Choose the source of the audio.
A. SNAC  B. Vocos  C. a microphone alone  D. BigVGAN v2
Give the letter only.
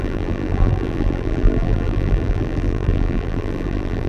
D